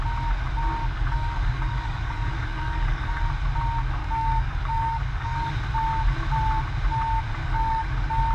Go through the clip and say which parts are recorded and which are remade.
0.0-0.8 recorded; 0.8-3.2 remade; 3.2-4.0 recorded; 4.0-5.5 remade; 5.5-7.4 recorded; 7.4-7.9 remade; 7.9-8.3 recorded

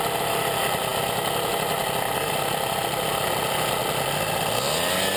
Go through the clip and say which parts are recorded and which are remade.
0.0-5.2 recorded

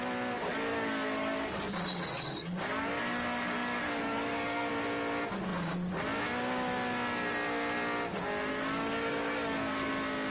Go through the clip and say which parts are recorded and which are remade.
0.0-0.7 recorded; 0.7-4.7 remade; 4.7-8.5 recorded; 8.5-9.9 remade; 9.9-10.3 recorded

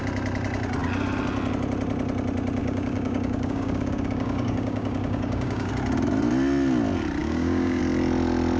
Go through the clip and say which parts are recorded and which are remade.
0.0-2.6 recorded; 2.6-5.7 remade; 5.7-7.2 recorded; 7.2-7.8 remade; 7.8-8.6 recorded

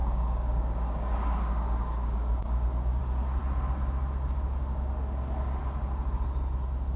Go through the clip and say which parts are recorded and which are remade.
0.0-3.0 remade; 3.0-7.0 recorded